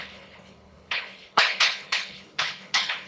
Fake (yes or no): yes